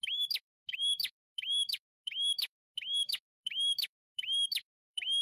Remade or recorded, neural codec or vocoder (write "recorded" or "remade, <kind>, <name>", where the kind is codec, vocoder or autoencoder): remade, autoencoder, DAC-VAE